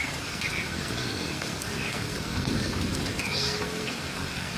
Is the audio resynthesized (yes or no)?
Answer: yes